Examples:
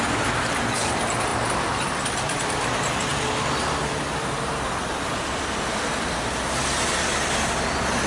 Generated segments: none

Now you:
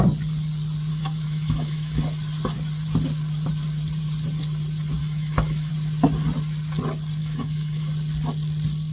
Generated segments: 0.9-2.0 (autoencoder, DAC-VAE); 5.0-5.7; 7.2-7.9

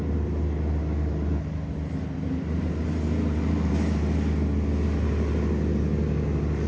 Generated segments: none

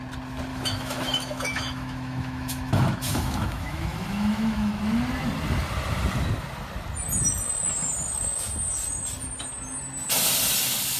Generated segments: 0.5-4.8 (autoencoder, DAC-VAE)

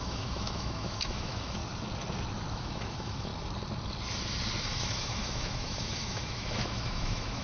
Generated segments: 0.0-1.6 (autoencoder, DAC-VAE); 2.5-3.3; 4.6-7.4

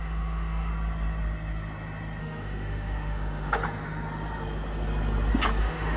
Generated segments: 0.0-0.7 (autoencoder, DAC-VAE); 2.2-3.6; 5.6-6.0

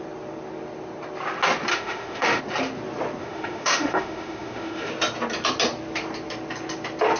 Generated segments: 1.7-2.4 (autoencoder, DAC-VAE); 3.2-4.9

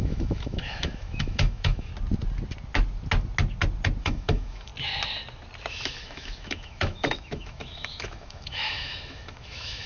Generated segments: 0.0-1.9 (autoencoder, DAC-VAE); 4.0-4.7; 5.7-9.9